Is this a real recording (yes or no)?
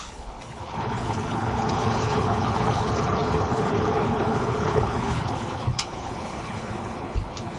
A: no